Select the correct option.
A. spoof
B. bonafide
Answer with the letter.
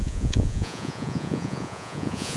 A